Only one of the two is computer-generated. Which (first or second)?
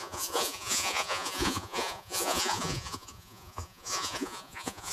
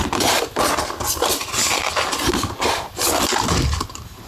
first